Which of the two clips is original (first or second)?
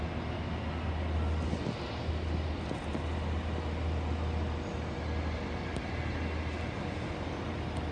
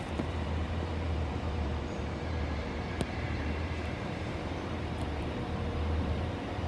first